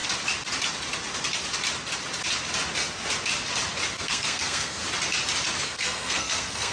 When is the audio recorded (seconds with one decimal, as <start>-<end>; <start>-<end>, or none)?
0.0-4.0; 4.8-5.6